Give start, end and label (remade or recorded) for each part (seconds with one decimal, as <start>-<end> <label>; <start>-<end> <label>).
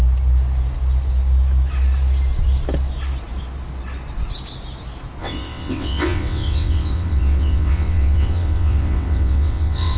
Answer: 0.0-5.2 recorded; 5.2-10.0 remade